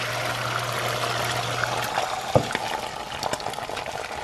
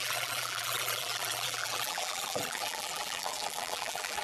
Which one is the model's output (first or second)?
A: second